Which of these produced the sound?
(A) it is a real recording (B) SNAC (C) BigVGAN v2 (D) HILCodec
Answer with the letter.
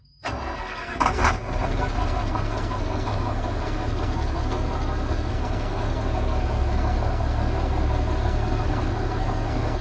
B